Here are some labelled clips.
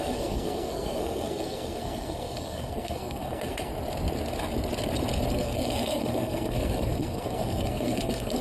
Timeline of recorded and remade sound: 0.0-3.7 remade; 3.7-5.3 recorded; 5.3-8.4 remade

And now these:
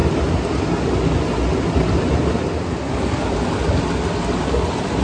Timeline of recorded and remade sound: 0.0-5.0 recorded

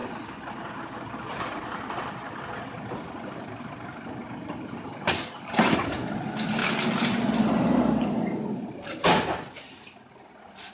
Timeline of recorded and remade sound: 0.0-10.7 recorded

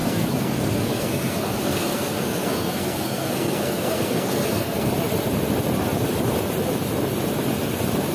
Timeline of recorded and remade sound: 0.0-4.9 remade; 4.9-8.1 recorded

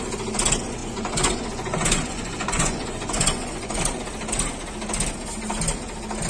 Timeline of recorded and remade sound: 0.0-0.8 recorded; 0.8-3.8 remade; 3.8-6.3 recorded

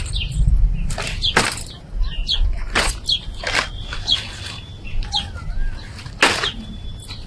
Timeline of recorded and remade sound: 0.0-2.2 recorded; 2.2-2.9 remade; 2.9-7.3 recorded

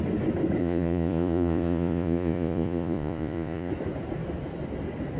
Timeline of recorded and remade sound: 0.0-0.6 recorded; 0.6-3.7 remade; 3.7-5.2 recorded

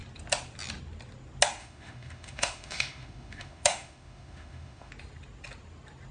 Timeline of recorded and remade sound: 0.0-1.6 recorded; 1.6-4.9 remade; 4.9-6.1 recorded